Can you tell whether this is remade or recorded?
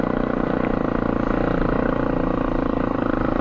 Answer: recorded